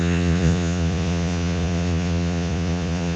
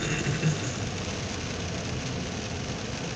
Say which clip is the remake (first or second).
first